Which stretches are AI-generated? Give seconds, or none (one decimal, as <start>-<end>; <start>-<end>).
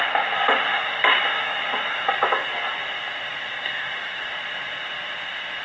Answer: 0.7-2.1; 3.5-4.2